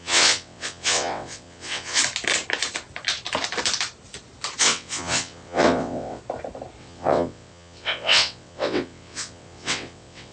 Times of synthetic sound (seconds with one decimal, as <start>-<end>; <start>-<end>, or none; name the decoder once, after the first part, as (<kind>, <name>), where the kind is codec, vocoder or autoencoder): 0.0-2.0 (vocoder, WaveNeXt); 4.6-6.2; 6.8-10.3